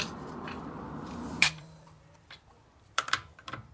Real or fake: fake